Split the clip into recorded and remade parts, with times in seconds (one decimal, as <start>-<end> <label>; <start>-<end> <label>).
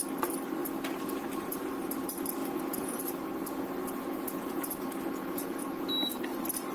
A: 0.0-2.4 recorded; 2.4-3.0 remade; 3.0-3.8 recorded; 3.8-5.9 remade; 5.9-6.7 recorded